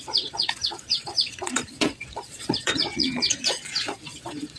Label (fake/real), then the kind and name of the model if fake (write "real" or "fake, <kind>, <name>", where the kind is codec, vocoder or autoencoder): fake, vocoder, Vocos